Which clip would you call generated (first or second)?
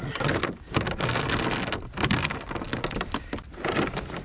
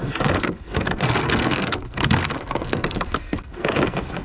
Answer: second